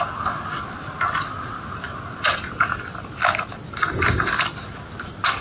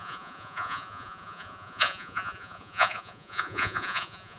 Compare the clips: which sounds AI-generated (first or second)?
second